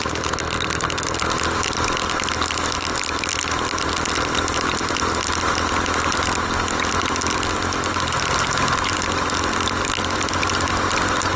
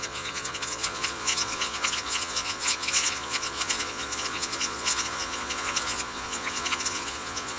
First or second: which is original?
first